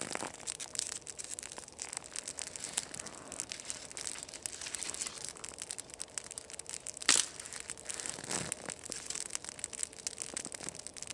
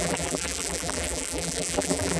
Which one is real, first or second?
first